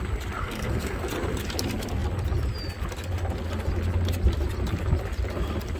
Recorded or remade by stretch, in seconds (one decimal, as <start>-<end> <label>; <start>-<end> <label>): 0.0-0.4 recorded; 0.4-1.0 remade; 1.0-5.8 recorded